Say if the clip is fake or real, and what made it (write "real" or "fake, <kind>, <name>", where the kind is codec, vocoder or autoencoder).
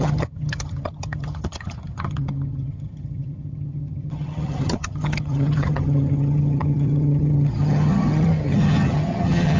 fake, vocoder, HiFi-GAN